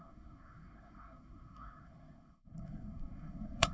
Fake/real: fake